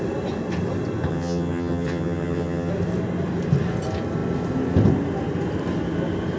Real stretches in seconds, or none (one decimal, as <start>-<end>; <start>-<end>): 0.0-1.1; 2.7-6.4